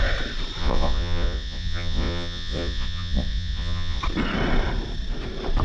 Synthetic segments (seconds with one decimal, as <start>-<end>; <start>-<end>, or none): 0.6-4.0